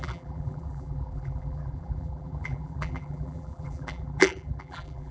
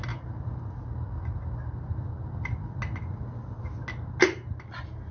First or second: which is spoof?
first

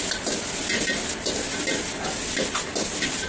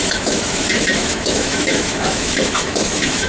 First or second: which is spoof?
second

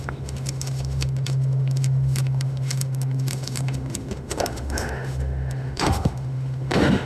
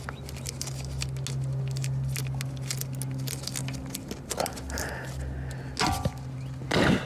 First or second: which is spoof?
first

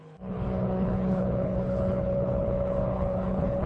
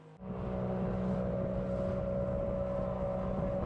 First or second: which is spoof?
first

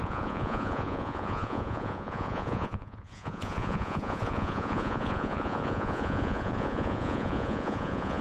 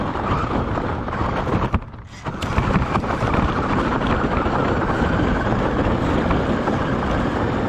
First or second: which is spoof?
first